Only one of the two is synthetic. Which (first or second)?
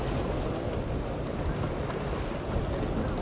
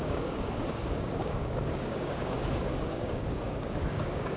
second